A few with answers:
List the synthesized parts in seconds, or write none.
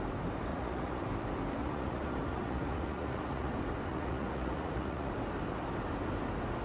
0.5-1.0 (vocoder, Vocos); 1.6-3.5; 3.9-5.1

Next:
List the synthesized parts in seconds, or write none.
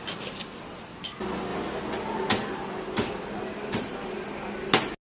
none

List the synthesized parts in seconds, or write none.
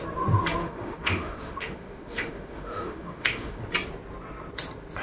0.6-3.6 (autoencoder, DAC-VAE)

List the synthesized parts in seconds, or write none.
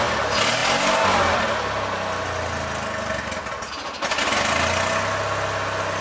none